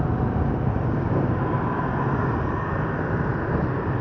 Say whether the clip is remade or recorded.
recorded